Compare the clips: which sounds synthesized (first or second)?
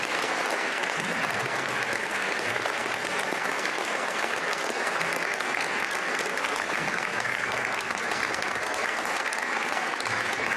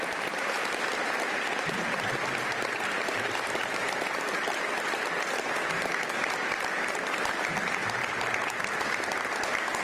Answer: first